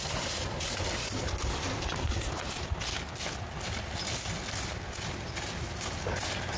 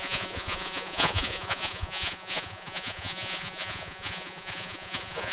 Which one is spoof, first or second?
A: second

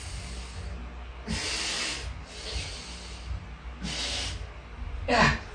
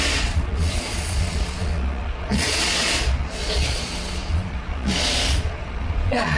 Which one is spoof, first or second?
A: second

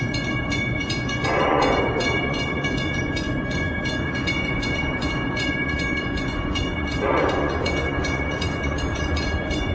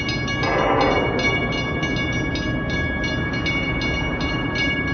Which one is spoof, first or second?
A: first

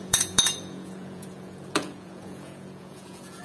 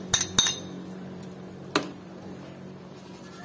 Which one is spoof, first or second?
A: first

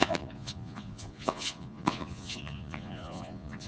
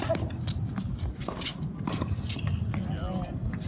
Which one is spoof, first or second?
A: first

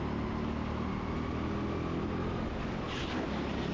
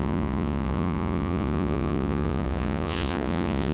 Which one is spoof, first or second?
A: second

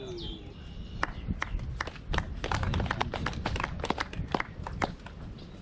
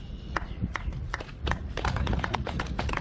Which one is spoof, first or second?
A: second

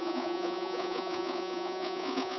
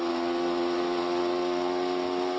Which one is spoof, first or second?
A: first